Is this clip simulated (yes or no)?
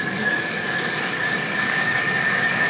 yes